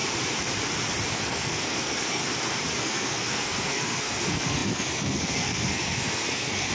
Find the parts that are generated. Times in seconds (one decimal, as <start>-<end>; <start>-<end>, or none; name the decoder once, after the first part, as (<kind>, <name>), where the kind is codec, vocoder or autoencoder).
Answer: 1.1-2.2 (codec, SNAC); 2.8-6.7